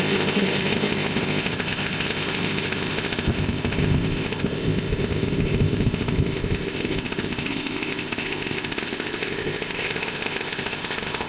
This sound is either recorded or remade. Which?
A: remade